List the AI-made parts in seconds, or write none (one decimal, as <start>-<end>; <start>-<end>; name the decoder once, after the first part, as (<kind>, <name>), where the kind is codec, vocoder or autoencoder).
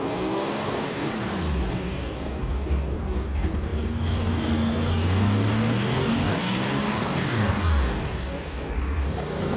0.0-1.1 (codec, DAC); 1.7-9.6